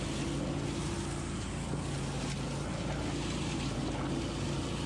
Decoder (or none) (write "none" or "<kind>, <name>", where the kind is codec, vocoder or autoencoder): none